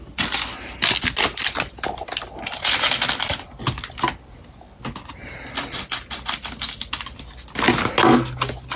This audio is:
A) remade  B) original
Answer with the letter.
B